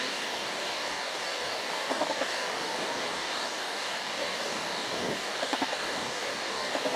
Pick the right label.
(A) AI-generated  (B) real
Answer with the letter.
A